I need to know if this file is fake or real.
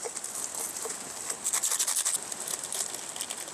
real